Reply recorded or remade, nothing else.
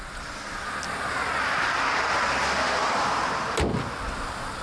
recorded